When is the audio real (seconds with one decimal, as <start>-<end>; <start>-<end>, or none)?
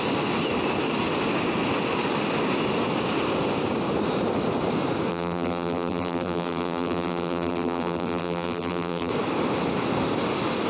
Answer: 0.0-5.1; 9.1-10.7